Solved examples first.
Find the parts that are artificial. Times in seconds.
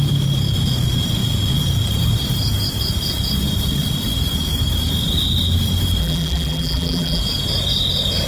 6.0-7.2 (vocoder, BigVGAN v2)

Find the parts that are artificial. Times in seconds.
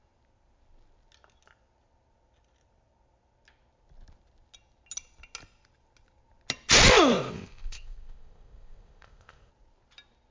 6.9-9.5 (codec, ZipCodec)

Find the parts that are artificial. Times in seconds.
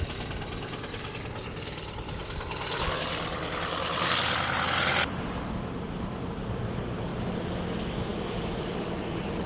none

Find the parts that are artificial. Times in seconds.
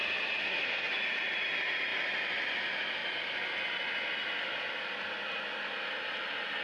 0.4-0.9 (codec, SNAC)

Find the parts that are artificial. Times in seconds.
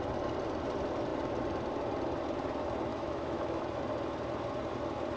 2.9-3.8 (autoencoder, DAC-VAE)